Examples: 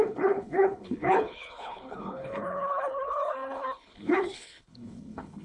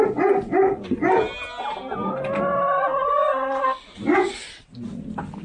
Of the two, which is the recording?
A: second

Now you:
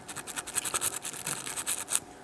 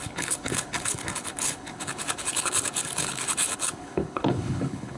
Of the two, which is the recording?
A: first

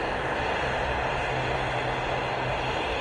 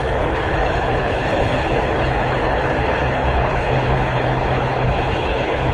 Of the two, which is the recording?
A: first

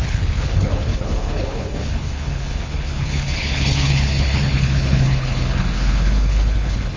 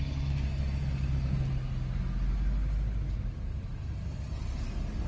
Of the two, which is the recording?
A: second